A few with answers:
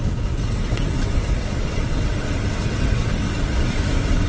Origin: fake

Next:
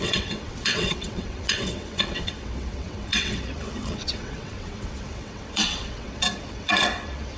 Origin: fake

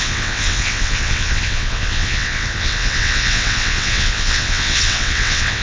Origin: fake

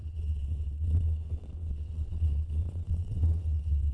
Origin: fake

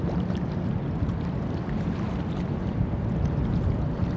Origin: real